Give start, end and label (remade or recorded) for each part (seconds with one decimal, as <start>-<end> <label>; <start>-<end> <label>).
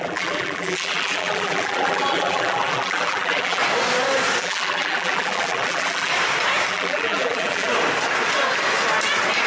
0.0-3.6 remade; 3.6-4.4 recorded; 4.4-6.1 remade; 6.1-6.7 recorded; 6.7-7.7 remade; 7.7-9.5 recorded